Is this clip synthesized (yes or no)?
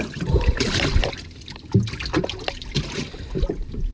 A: no